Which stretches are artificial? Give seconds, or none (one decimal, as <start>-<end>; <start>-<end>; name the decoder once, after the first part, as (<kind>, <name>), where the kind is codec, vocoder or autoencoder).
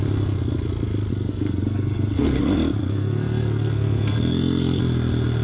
1.1-2.4 (codec, SNAC); 2.8-4.8